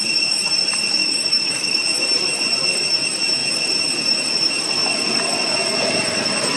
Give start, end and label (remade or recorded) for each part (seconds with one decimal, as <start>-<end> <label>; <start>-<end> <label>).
0.0-1.0 recorded; 1.0-1.8 remade; 1.8-6.6 recorded